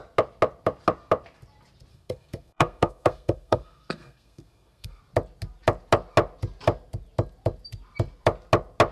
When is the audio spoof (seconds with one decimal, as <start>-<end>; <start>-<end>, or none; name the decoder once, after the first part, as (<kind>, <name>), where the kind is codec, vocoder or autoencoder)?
1.9-5.0 (codec, SNAC)